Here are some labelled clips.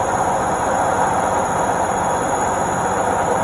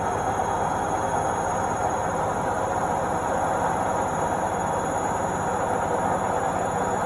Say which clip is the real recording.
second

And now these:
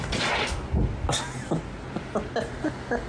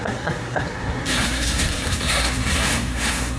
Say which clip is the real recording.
first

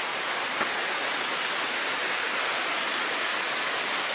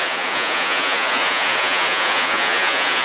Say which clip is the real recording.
first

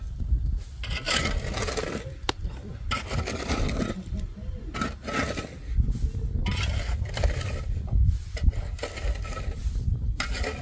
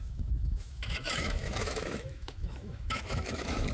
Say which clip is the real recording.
first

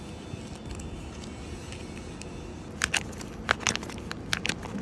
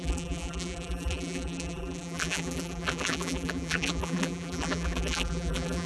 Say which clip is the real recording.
first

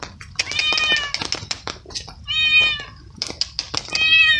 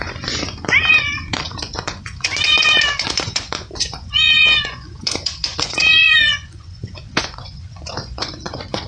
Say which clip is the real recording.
first